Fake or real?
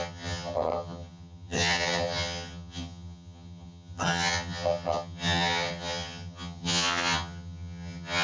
fake